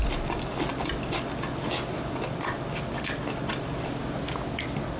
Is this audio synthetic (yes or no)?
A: no